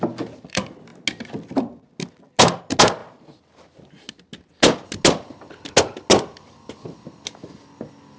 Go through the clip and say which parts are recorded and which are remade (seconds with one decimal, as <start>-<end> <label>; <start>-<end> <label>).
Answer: 0.0-8.2 recorded